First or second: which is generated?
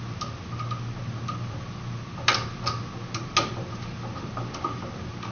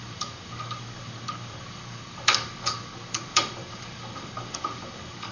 second